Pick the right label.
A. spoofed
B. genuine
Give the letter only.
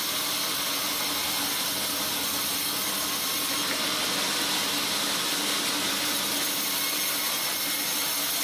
B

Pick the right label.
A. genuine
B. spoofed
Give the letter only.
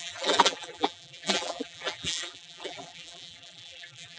B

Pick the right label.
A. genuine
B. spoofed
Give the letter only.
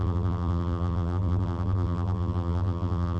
B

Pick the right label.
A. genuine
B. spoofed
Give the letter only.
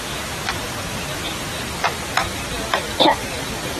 A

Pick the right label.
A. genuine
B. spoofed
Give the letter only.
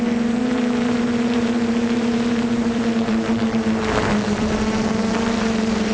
B